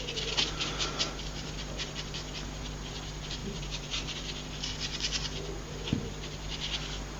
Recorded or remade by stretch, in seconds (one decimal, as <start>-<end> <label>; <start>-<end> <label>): 0.0-3.4 recorded; 3.4-4.0 remade; 4.0-7.2 recorded